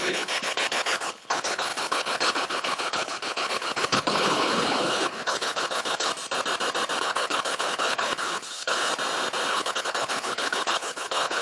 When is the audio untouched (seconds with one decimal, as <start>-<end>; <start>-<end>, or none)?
6.1-7.0; 8.9-9.5